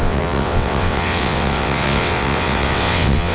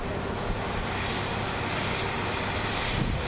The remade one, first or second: first